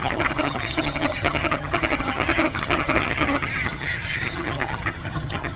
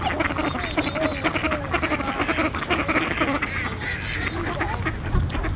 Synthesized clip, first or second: first